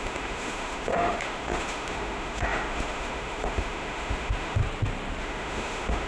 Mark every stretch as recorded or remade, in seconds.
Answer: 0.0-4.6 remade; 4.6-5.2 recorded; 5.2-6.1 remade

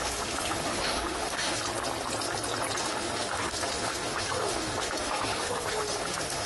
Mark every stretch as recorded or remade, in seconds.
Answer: 0.0-1.6 remade; 1.6-2.8 recorded; 2.8-6.5 remade